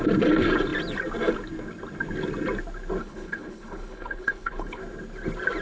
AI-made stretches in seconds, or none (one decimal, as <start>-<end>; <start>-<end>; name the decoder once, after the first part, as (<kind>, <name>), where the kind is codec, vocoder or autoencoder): 3.0-4.8 (codec, HILCodec)